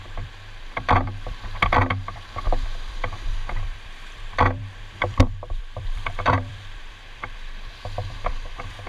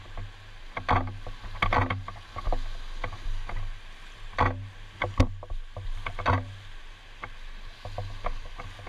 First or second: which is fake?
first